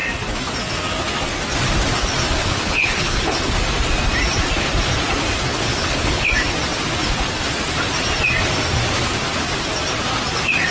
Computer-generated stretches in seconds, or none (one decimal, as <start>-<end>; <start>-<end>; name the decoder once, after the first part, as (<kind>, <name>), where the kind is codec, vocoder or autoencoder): 2.4-3.5 (codec, HILCodec); 5.5-6.2